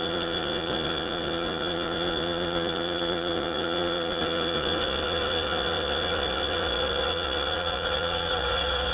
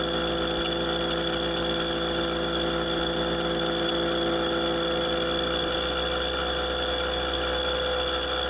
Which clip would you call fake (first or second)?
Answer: first